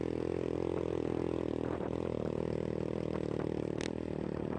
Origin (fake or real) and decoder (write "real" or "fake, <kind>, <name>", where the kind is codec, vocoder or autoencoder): real